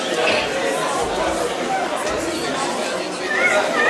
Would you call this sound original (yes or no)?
yes